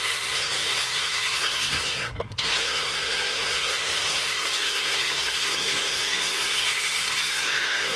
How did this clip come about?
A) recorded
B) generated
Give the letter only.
B